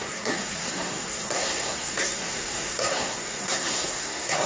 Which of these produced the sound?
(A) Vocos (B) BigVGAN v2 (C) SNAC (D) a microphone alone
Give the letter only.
C